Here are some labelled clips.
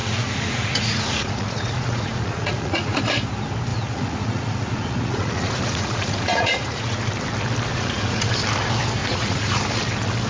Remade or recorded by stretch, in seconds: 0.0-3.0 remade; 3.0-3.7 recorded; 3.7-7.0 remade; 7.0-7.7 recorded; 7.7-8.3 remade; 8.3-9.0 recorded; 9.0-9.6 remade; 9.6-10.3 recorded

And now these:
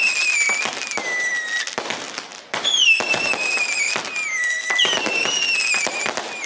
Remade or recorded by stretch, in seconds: 0.0-6.5 recorded

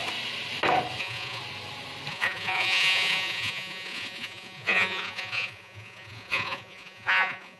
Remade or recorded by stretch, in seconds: 0.0-1.0 recorded; 1.0-1.4 remade; 1.4-2.1 recorded; 2.1-7.6 remade

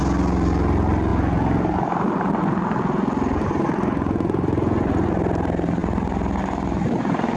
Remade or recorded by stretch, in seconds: 0.0-3.4 recorded; 3.4-5.1 remade; 5.1-7.4 recorded

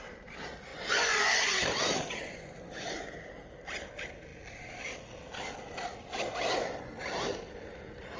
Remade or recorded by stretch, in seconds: 0.0-0.7 recorded; 0.7-1.6 remade; 1.6-2.2 recorded; 2.2-3.0 remade; 3.0-8.2 recorded